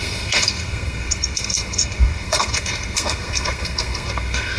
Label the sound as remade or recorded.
remade